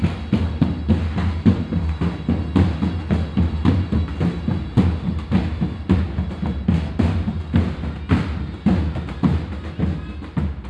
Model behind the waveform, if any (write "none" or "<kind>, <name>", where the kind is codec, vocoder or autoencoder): none